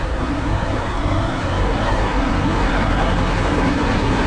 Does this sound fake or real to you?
fake